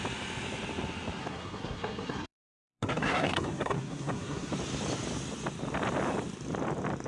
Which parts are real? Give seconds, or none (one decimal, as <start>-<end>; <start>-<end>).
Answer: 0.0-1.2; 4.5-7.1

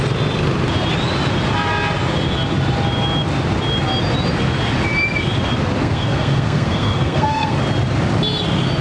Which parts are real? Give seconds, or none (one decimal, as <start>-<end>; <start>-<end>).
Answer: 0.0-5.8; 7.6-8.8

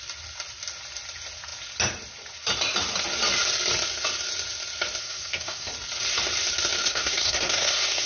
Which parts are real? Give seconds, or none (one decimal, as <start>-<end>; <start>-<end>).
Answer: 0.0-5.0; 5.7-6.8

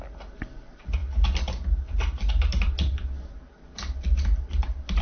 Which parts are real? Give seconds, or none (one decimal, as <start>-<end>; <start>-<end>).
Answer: 0.0-5.0